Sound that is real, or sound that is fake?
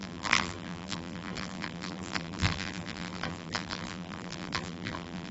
fake